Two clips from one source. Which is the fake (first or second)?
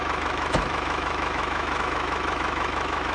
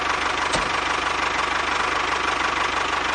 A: first